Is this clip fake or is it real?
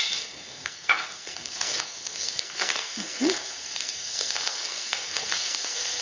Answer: fake